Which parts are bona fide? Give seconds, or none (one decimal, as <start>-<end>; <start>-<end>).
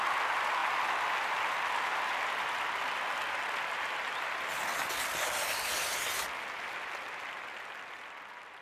0.0-8.6